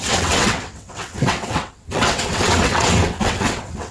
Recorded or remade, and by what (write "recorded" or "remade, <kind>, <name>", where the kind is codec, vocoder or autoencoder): remade, vocoder, WaveNeXt